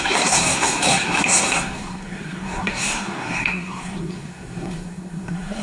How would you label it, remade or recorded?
remade